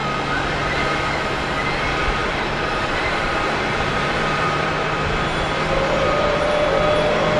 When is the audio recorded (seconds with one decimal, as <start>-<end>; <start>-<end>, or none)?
0.0-2.2; 4.7-7.4